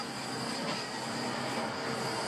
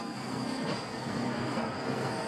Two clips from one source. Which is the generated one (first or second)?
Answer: second